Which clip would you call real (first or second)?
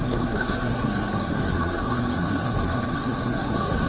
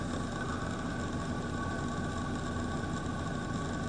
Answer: second